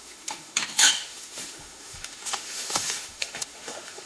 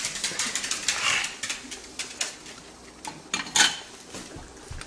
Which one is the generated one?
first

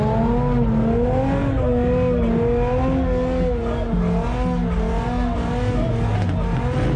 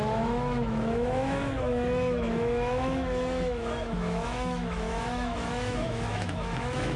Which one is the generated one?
second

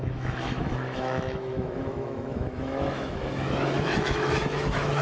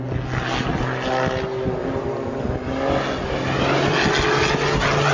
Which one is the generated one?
first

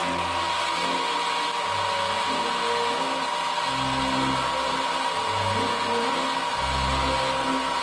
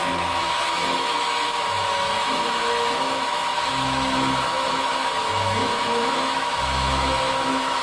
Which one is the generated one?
second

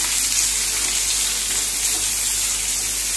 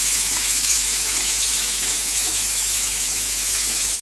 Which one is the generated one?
second